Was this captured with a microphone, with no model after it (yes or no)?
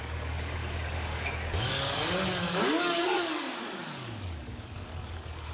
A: no